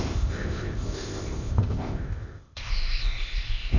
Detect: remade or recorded remade